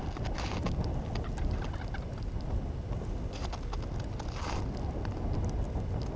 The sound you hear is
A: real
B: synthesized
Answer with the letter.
A